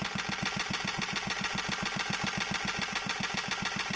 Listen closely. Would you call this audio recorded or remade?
recorded